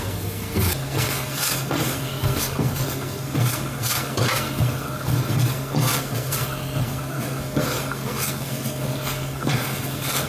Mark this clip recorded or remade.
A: remade